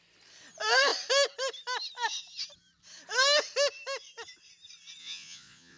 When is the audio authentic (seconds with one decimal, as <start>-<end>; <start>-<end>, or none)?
0.0-5.0